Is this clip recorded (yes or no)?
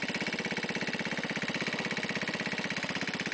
yes